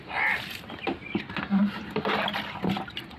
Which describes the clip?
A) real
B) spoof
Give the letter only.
A